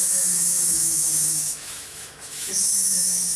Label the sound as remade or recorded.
remade